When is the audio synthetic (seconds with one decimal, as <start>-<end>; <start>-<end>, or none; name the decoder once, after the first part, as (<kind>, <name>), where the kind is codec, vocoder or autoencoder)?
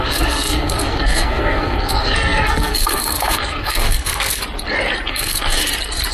0.0-4.4 (codec, SNAC); 5.1-5.6